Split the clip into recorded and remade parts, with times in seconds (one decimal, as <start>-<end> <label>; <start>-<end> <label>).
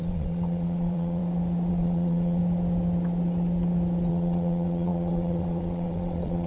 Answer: 0.0-1.2 remade; 1.2-1.7 recorded; 1.7-2.4 remade; 2.4-4.1 recorded; 4.1-6.5 remade